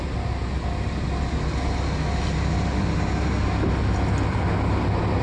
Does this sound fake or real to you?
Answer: real